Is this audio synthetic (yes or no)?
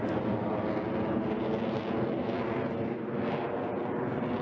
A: no